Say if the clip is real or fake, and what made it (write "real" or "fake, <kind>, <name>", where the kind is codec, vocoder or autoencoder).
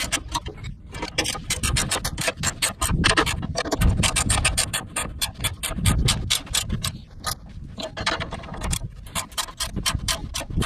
fake, vocoder, BigVGAN v2